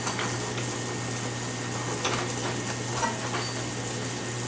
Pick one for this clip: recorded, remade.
recorded